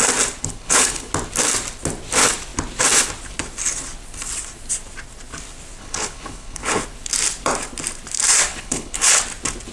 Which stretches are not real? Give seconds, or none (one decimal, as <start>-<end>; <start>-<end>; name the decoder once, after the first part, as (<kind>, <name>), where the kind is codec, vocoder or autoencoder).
0.4-1.1 (codec, HILCodec); 5.8-6.8; 8.5-9.2

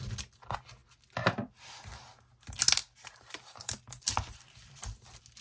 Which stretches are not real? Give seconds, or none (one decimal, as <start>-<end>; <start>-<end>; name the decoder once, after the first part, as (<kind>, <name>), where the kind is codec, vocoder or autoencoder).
none